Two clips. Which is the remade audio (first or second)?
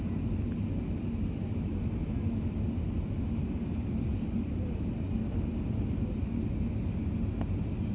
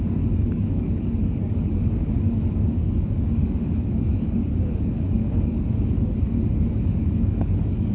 second